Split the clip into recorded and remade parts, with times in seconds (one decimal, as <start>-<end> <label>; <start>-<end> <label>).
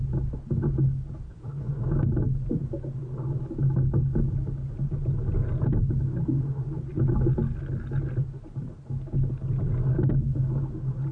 0.0-1.3 recorded; 1.3-1.8 remade; 1.8-11.1 recorded